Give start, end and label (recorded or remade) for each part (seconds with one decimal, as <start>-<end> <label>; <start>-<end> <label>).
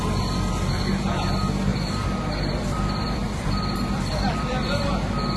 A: 0.0-1.7 recorded; 1.7-4.9 remade; 4.9-5.4 recorded